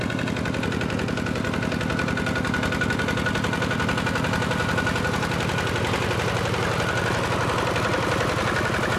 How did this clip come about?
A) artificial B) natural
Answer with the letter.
B